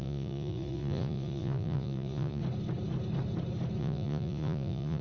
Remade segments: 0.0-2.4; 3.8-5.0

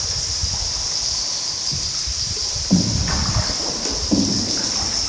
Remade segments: none

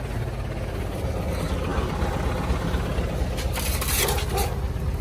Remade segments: none

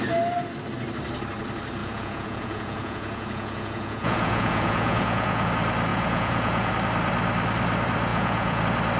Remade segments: 1.8-5.5; 5.9-6.7; 8.1-8.6

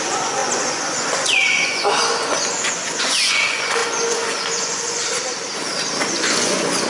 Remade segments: 0.0-5.0; 6.0-6.9